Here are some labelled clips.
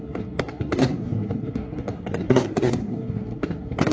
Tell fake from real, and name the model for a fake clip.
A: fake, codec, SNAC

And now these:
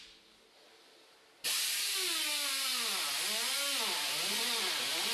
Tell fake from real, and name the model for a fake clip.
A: real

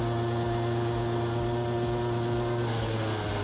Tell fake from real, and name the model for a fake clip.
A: real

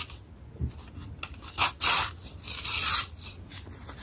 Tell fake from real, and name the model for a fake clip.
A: real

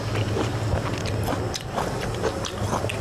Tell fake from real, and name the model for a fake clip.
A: real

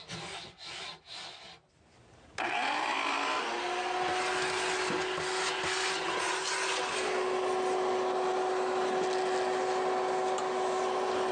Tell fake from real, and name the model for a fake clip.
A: real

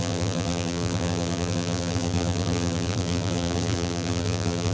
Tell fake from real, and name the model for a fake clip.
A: fake, vocoder, BigVGAN v2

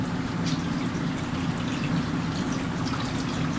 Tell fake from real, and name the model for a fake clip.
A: real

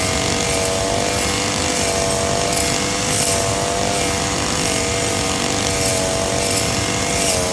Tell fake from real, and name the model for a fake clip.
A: real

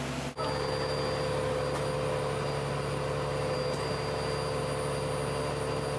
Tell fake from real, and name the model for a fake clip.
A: real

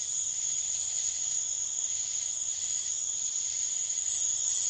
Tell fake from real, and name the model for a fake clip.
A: real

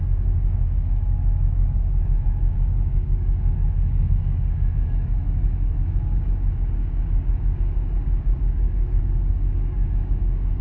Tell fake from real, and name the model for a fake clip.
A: fake, codec, DAC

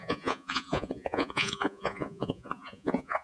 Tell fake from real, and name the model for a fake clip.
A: fake, vocoder, Vocos